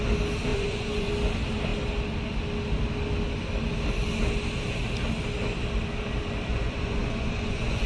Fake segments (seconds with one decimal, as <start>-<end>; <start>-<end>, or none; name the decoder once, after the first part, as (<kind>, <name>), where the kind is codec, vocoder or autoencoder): 0.5-1.1 (vocoder, Vocos); 6.5-7.9